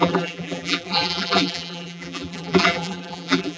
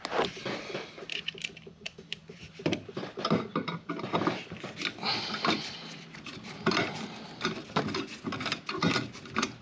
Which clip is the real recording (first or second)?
second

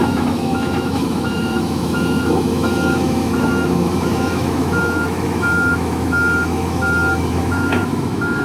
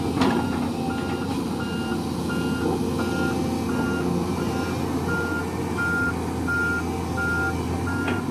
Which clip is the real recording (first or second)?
second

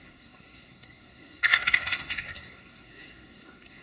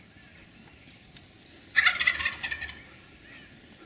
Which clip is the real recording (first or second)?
second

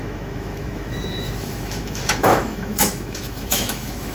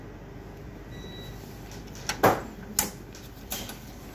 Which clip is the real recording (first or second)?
second